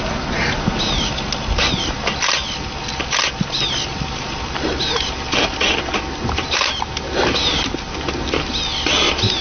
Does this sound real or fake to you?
real